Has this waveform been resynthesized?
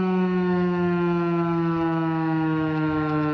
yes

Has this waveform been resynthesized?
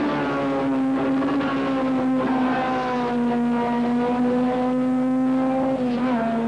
no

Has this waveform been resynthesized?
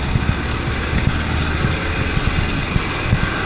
no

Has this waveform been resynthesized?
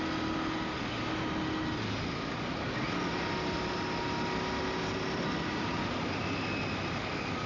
no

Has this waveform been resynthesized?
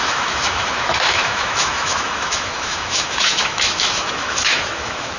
yes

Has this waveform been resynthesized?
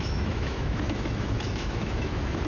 yes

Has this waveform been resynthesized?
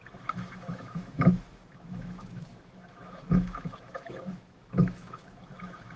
yes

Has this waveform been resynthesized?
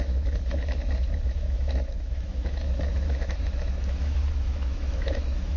yes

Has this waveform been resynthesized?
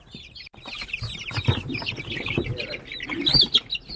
no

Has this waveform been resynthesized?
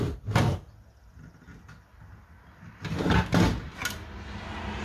no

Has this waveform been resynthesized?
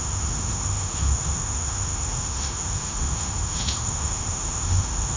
yes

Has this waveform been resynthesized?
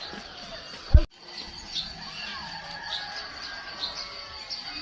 no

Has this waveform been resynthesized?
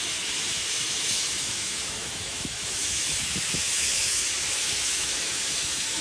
yes